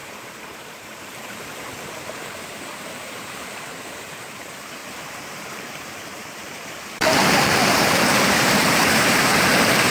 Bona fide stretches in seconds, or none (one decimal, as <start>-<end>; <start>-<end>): none